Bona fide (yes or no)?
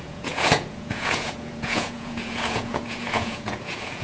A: no